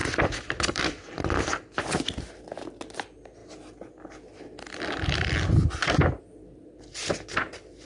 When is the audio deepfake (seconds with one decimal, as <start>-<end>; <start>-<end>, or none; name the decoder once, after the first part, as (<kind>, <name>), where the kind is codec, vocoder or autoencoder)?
0.0-1.8 (vocoder, BigVGAN v2)